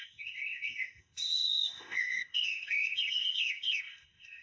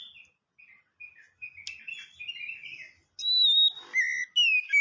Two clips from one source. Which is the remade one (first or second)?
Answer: first